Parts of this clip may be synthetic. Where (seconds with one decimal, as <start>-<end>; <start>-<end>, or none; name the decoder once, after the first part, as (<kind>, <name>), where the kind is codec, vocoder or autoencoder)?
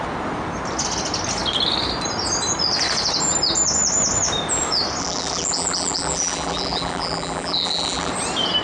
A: 5.0-8.1 (vocoder, BigVGAN v2)